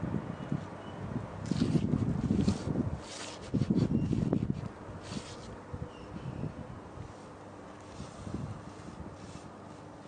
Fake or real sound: real